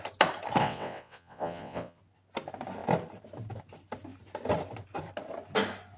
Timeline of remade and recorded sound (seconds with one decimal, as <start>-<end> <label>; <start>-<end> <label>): 0.0-0.6 recorded; 0.6-2.0 remade; 2.0-6.0 recorded

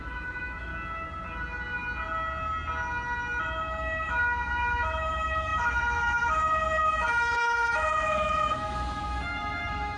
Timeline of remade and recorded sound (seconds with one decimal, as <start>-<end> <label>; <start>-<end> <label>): 0.0-0.7 remade; 0.7-3.4 recorded; 3.4-10.0 remade

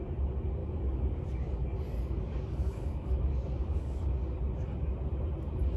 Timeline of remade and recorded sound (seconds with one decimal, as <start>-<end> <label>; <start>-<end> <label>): 0.0-0.6 recorded; 0.6-4.1 remade; 4.1-5.8 recorded

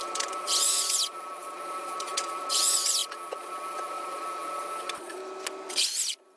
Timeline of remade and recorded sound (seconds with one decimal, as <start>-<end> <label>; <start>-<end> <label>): 0.0-5.2 remade; 5.2-5.7 recorded; 5.7-6.4 remade

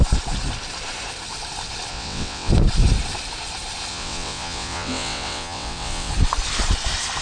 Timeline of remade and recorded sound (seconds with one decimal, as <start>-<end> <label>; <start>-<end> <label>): 0.0-1.9 recorded; 1.9-2.5 remade; 2.5-3.9 recorded; 3.9-6.1 remade; 6.1-7.2 recorded

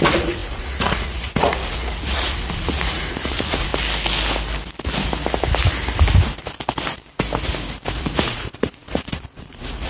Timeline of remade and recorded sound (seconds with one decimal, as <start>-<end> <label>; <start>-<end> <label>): 0.0-3.7 remade; 3.7-8.0 recorded; 8.0-9.9 remade